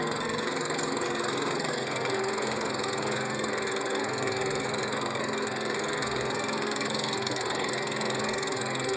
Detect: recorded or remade remade